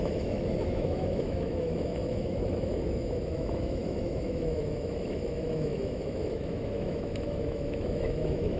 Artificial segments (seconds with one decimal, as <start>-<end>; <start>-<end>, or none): 0.0-8.6